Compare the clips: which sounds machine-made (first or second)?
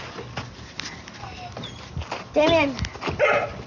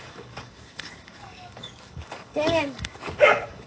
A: second